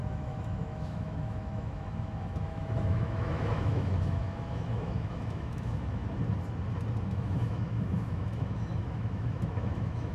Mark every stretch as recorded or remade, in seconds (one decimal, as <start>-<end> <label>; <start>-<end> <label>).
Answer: 0.0-6.0 remade; 6.0-7.0 recorded; 7.0-10.1 remade